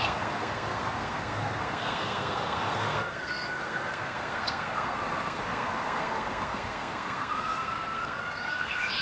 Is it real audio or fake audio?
fake